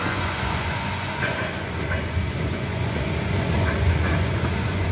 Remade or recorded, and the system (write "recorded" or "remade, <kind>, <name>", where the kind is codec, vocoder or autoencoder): remade, vocoder, Vocos